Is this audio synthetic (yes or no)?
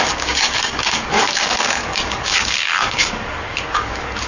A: yes